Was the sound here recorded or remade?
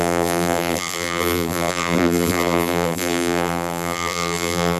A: remade